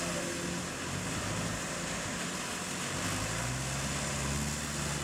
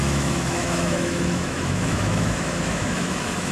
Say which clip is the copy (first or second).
second